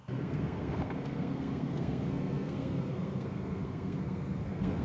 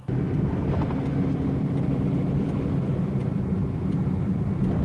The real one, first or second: second